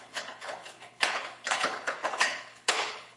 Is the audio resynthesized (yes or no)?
yes